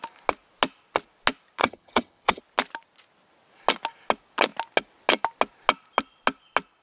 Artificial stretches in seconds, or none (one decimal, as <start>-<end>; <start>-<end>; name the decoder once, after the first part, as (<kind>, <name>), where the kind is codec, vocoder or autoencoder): 1.6-2.4 (vocoder, HiFi-GAN)